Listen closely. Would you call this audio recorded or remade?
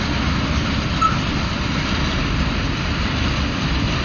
recorded